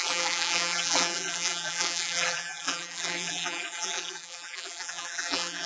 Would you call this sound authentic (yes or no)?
no